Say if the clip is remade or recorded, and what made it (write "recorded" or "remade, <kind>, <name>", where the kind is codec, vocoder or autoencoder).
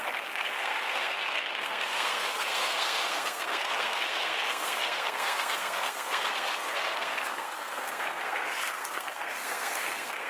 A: remade, codec, SNAC